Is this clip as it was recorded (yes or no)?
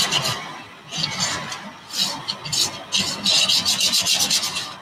yes